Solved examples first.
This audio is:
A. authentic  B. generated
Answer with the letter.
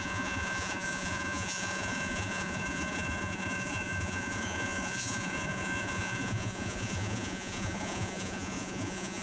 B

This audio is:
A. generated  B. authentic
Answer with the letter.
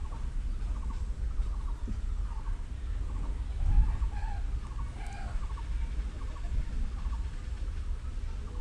B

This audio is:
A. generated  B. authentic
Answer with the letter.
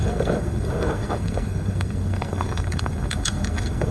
A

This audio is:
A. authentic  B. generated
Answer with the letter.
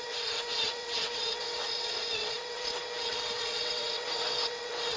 B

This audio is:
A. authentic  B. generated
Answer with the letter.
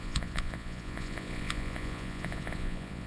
B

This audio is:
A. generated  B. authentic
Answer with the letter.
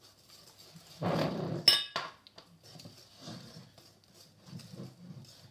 B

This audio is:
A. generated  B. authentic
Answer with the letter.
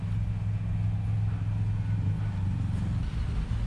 B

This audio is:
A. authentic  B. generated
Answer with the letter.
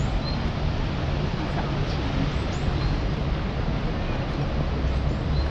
A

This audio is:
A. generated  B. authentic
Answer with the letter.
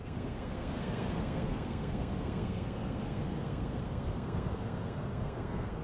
A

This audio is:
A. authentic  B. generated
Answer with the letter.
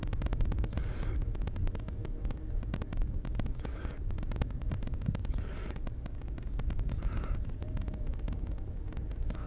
B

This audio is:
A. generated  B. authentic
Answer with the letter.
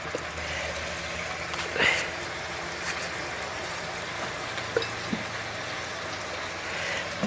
B